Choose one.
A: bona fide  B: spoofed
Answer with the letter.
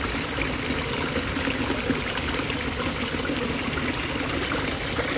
A